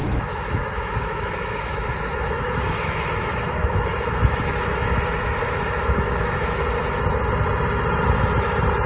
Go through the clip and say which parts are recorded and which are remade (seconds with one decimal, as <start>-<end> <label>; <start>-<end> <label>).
0.0-5.0 remade; 5.0-5.4 recorded; 5.4-6.6 remade; 6.6-8.9 recorded